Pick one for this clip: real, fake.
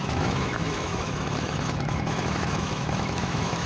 fake